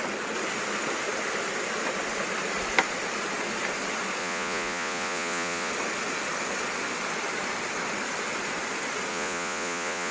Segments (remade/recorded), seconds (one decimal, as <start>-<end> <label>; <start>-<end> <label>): 0.0-4.2 recorded; 4.2-5.7 remade; 5.7-9.1 recorded; 9.1-10.1 remade